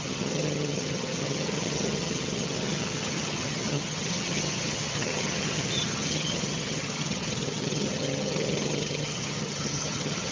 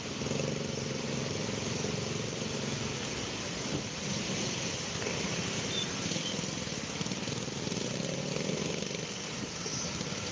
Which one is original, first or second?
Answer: second